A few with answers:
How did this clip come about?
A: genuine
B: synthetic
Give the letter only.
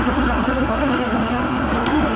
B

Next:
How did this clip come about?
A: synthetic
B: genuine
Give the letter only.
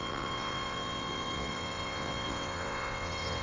A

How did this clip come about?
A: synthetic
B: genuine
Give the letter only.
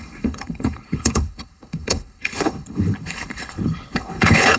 A